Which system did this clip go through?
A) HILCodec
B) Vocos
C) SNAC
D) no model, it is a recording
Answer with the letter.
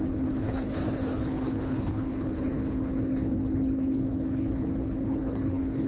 A